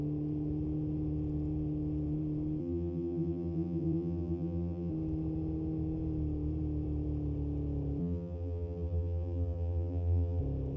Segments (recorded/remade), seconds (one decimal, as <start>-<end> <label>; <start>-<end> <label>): 0.0-2.6 recorded; 2.6-4.9 remade; 4.9-8.0 recorded; 8.0-10.4 remade; 10.4-10.8 recorded